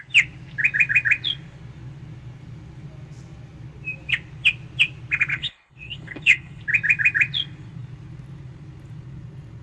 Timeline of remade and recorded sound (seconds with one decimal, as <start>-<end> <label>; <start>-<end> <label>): 0.0-5.3 recorded; 5.3-6.6 remade; 6.6-9.6 recorded